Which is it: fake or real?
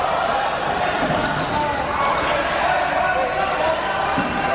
real